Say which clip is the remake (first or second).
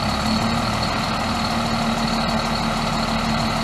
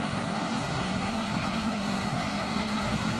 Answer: second